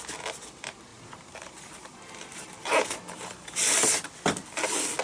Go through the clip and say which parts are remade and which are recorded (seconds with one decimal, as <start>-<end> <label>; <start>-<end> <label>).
0.0-0.9 recorded; 0.9-3.9 remade; 3.9-5.0 recorded